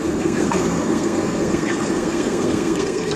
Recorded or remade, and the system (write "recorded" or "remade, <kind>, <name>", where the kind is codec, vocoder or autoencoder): remade, codec, SNAC